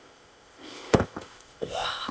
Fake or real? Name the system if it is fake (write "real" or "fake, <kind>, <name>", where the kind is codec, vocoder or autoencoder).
fake, codec, ZipCodec